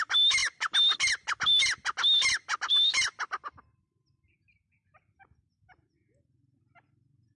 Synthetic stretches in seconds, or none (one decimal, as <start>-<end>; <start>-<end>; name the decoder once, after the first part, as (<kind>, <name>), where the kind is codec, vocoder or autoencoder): none